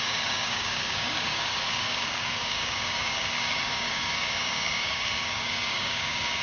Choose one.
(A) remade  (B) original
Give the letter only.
A